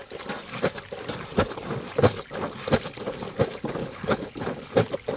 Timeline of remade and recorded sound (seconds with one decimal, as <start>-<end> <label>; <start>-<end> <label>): 0.0-3.8 recorded; 3.8-4.7 remade; 4.7-5.2 recorded